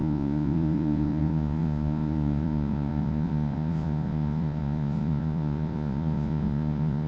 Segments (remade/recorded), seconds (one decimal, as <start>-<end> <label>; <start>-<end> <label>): 0.0-7.1 remade